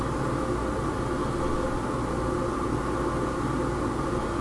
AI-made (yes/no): no